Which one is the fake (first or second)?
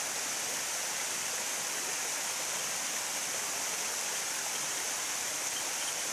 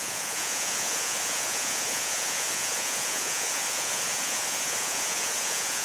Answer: second